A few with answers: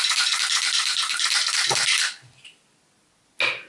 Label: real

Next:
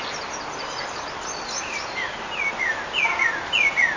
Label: real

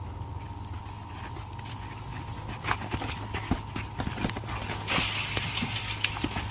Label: real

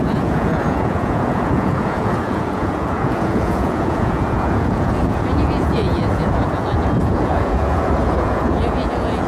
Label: fake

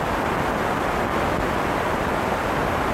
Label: real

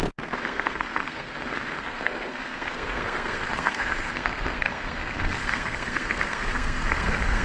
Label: fake